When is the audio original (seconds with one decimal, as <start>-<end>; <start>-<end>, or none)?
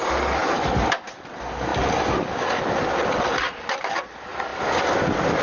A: 0.0-5.4